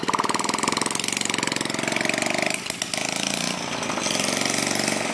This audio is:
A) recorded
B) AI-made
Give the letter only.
A